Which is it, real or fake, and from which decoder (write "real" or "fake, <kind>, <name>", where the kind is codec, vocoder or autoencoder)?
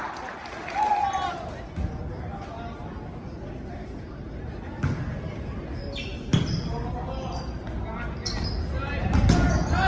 real